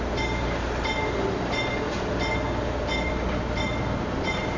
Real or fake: real